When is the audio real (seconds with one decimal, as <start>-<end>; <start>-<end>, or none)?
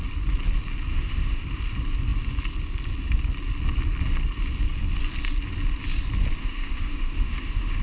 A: 0.0-0.9; 1.4-6.4